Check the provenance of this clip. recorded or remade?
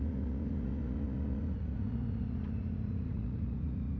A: remade